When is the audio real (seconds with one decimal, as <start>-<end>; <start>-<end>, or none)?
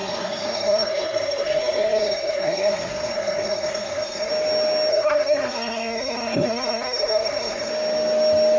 4.3-4.9; 7.7-8.6